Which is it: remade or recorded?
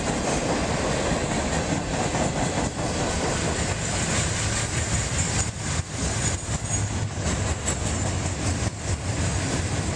recorded